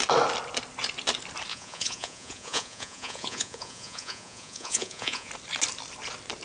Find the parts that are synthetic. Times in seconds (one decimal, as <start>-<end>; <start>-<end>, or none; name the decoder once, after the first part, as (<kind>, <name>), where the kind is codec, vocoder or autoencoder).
1.5-5.3 (vocoder, Vocos)